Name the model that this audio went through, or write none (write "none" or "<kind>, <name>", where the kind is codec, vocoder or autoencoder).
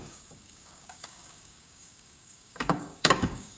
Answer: codec, DAC